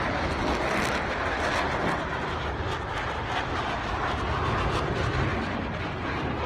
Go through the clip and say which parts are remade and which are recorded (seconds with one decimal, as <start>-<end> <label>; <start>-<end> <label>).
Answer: 0.0-5.3 recorded; 5.3-5.8 remade; 5.8-6.5 recorded

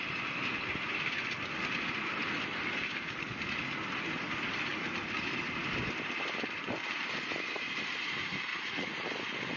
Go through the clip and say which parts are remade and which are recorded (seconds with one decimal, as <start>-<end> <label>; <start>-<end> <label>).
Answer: 0.0-8.5 recorded; 8.5-9.1 remade; 9.1-9.6 recorded

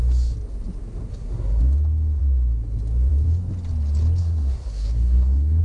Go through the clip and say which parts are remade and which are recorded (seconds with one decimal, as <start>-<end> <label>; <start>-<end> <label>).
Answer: 0.0-1.1 recorded; 1.1-1.6 remade; 1.6-4.2 recorded; 4.2-5.6 remade

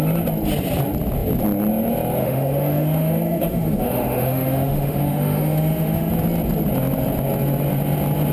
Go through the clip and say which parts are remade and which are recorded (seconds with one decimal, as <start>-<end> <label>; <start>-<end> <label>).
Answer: 0.0-2.2 recorded; 2.2-6.1 remade; 6.1-8.3 recorded